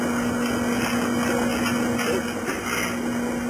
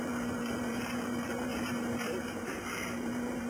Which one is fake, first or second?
second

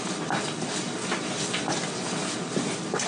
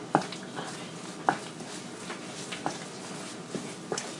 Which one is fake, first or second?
first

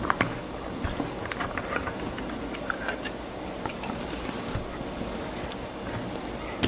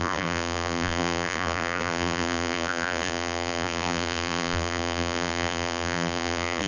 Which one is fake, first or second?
second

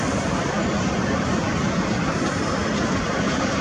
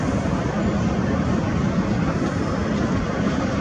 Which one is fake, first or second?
first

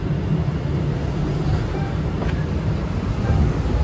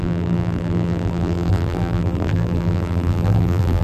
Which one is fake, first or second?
second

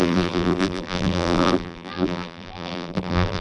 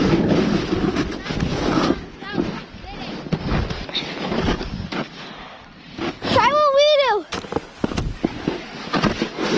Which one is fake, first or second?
first